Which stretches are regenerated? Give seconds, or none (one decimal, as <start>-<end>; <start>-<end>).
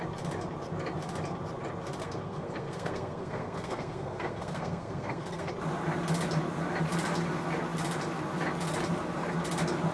2.0-5.5